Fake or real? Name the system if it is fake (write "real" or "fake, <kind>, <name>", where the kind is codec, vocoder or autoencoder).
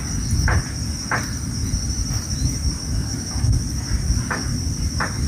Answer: real